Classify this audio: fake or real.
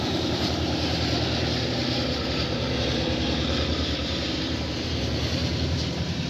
fake